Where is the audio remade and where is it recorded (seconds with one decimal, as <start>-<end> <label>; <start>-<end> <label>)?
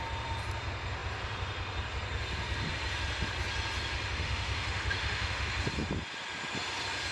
0.0-4.2 recorded; 4.2-5.5 remade; 5.5-7.1 recorded